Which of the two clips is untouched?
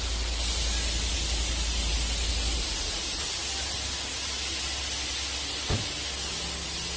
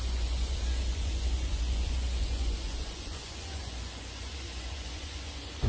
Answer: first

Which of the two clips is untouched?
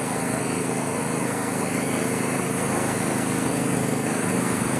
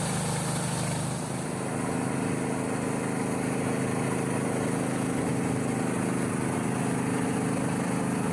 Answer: second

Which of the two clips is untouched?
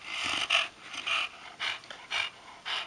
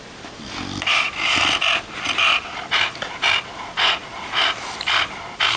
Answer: second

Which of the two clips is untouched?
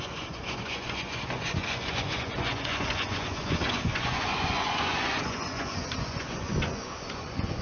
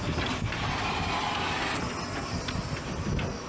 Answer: second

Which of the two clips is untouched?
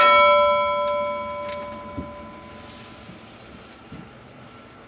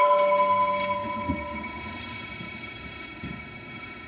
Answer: first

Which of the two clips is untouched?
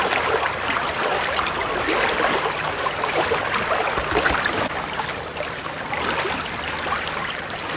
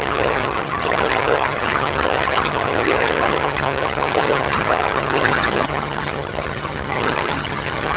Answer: first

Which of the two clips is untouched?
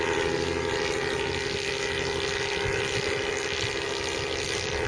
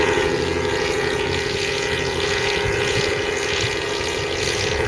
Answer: first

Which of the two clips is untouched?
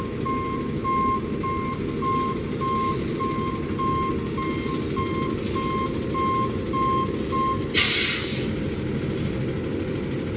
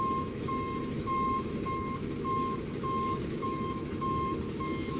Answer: first